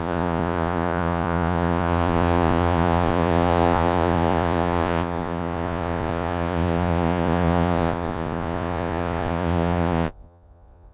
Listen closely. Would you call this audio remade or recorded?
remade